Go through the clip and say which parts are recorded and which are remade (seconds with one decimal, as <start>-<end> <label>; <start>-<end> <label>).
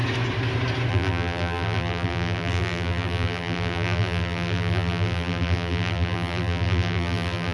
0.0-0.9 recorded; 0.9-7.5 remade